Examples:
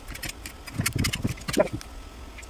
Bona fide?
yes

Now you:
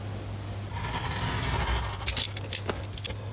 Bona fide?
yes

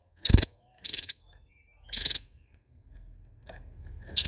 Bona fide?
no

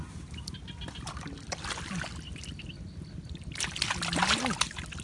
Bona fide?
yes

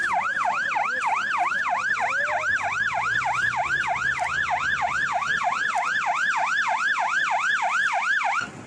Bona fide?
yes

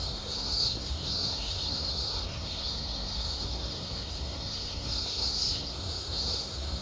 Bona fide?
no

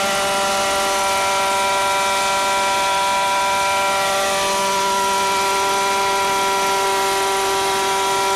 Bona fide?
yes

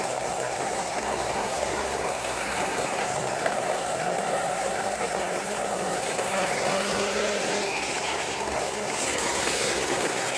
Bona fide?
no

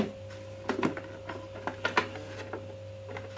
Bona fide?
yes